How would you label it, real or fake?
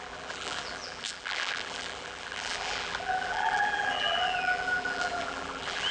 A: fake